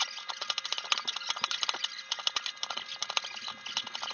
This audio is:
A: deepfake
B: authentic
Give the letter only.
B